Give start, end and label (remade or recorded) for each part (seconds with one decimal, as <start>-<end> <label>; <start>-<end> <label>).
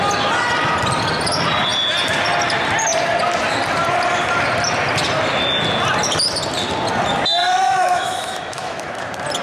0.0-7.4 recorded; 7.4-9.0 remade; 9.0-9.4 recorded